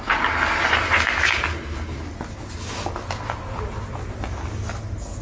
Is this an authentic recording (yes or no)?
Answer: yes